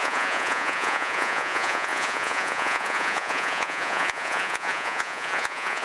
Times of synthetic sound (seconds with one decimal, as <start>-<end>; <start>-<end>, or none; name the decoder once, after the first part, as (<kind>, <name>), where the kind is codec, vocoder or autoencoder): 0.0-5.8 (vocoder, Vocos)